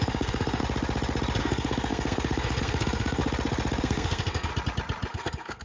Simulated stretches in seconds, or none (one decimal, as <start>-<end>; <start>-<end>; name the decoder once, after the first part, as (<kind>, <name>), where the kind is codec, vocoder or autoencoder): 0.0-0.6 (codec, SNAC); 1.4-3.2; 3.8-4.5; 5.1-5.6